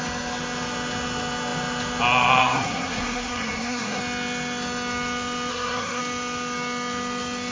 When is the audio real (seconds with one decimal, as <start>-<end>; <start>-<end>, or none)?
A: 0.0-2.4; 4.0-5.5; 6.0-7.5